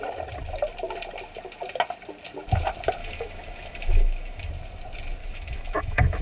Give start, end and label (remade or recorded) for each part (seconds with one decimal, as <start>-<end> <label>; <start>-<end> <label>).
0.0-3.0 recorded; 3.0-4.5 remade; 4.5-5.2 recorded; 5.2-6.2 remade